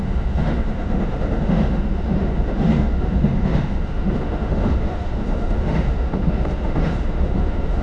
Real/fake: fake